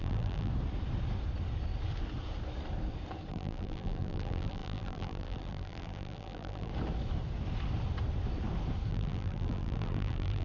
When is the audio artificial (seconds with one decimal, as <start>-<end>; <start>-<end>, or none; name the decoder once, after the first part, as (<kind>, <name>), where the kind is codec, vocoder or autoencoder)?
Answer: 0.0-0.5 (vocoder, BigVGAN v2); 3.3-6.7; 8.9-10.4